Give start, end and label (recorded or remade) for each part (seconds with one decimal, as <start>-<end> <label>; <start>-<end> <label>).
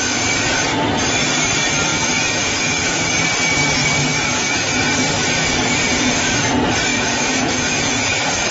0.0-1.9 recorded; 1.9-3.1 remade; 3.1-4.0 recorded; 4.0-4.8 remade; 4.8-6.9 recorded; 6.9-8.5 remade